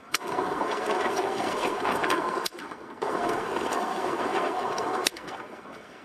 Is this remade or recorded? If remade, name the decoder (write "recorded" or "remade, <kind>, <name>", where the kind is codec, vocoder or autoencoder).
remade, codec, SNAC